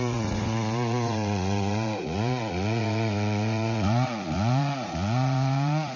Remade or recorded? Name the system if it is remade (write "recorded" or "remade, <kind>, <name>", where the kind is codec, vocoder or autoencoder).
remade, vocoder, Vocos